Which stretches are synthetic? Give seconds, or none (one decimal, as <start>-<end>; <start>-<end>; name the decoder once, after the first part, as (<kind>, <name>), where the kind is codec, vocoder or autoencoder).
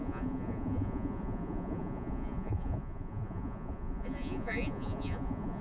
0.0-5.6 (vocoder, Vocos)